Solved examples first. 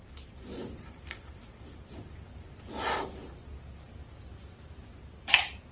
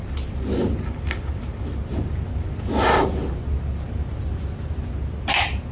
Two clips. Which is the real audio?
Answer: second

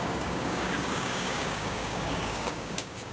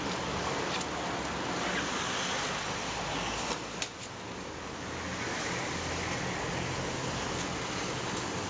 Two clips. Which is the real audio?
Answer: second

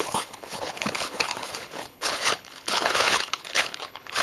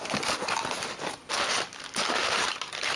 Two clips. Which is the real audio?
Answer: second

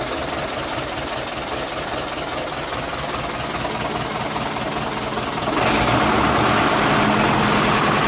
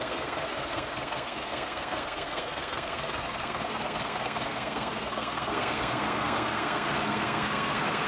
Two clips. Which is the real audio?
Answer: first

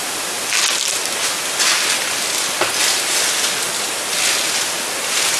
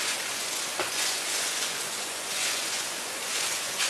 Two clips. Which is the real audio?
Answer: first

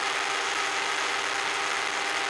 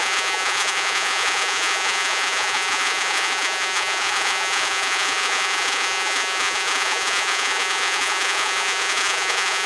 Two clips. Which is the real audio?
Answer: first